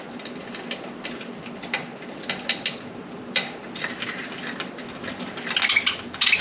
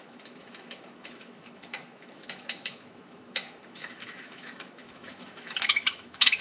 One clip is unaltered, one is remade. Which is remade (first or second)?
second